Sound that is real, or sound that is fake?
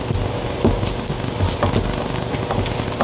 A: real